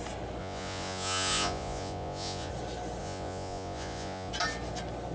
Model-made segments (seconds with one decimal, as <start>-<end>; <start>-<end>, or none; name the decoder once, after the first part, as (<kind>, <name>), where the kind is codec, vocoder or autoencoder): 0.4-2.5 (vocoder, Vocos); 3.0-4.3

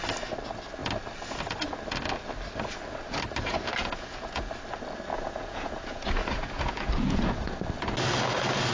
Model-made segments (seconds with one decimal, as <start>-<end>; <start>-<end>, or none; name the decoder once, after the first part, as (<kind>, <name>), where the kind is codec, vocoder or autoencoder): 3.8-4.5 (vocoder, Vocos); 5.1-7.6

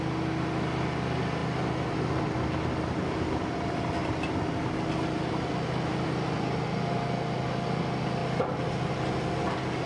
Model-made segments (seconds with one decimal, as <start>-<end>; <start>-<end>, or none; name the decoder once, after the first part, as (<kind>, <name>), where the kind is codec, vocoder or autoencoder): none

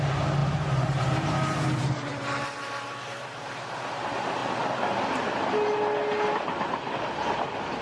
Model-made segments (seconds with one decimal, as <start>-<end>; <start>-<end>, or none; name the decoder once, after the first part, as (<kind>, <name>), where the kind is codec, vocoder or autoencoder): 0.0-4.4 (vocoder, BigVGAN v2); 7.0-7.8

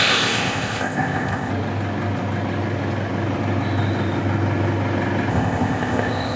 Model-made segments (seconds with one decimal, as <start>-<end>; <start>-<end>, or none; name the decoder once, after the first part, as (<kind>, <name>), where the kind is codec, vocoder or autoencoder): 0.0-1.5 (codec, ZipCodec); 5.3-6.4

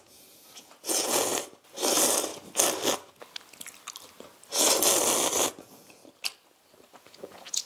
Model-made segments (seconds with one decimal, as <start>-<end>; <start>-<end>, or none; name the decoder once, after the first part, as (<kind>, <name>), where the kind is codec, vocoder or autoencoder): 0.0-1.3 (vocoder, Vocos); 5.6-6.0; 7.0-7.7

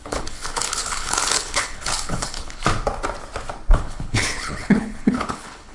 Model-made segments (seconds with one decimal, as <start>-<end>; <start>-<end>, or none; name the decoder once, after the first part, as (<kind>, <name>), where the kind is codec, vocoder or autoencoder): 0.0-2.6 (codec, HILCodec); 3.8-5.7